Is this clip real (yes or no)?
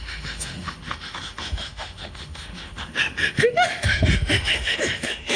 no